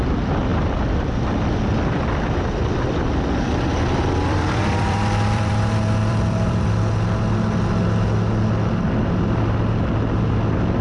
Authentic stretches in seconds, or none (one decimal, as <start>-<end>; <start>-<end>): 0.0-0.5; 5.6-6.0; 6.9-10.8

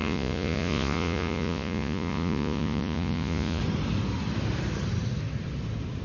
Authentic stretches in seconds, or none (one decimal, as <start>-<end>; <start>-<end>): 3.6-6.0

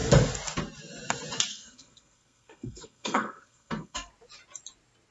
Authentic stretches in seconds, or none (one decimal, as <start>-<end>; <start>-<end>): 0.0-1.5; 4.1-5.1

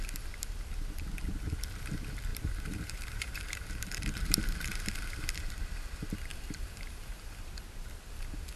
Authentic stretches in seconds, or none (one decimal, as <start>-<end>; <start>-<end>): 0.0-2.3; 5.4-6.3; 7.5-8.6

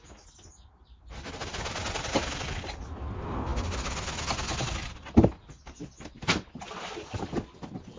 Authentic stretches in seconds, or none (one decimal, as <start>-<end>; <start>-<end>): 0.0-8.0

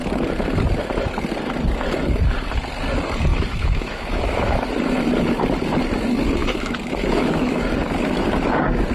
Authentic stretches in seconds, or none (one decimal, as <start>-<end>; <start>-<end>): 0.0-3.3; 4.7-6.4; 7.6-8.9